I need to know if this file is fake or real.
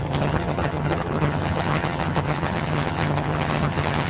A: fake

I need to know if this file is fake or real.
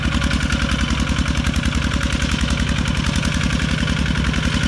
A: real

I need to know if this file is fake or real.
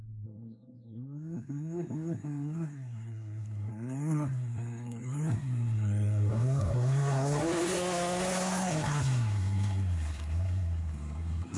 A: fake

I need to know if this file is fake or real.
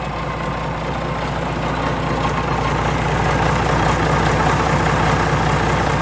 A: real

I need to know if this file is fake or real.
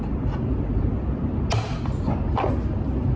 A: real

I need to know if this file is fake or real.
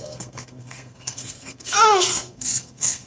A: fake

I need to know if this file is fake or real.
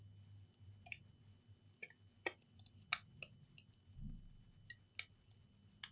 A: real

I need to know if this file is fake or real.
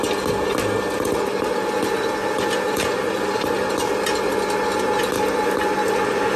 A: real